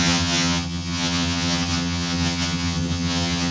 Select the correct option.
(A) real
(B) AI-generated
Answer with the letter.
B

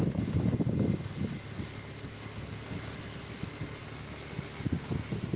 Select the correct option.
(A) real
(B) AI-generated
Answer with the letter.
A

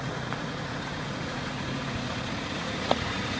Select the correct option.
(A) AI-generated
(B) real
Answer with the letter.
A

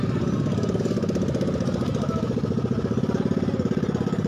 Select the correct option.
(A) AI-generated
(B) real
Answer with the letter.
B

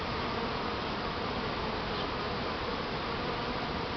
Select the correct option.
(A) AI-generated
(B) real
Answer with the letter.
B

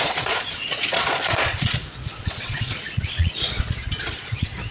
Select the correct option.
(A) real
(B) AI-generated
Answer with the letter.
B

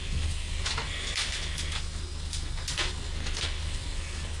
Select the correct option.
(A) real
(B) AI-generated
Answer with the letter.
B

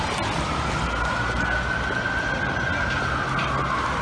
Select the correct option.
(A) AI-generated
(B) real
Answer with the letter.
B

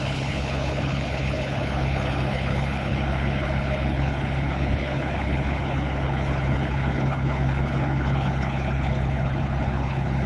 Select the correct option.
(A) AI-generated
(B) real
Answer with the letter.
A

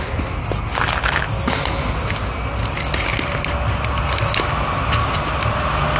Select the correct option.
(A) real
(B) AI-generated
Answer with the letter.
A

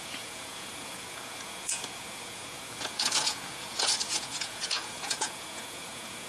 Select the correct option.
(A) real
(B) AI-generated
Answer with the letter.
B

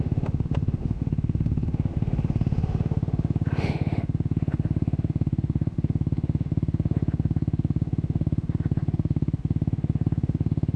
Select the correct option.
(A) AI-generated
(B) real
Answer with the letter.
A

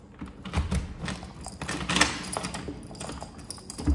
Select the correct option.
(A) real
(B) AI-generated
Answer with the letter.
A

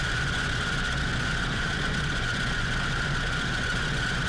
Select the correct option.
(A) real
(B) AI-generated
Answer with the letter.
B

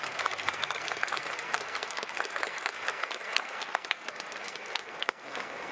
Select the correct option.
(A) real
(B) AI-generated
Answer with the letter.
B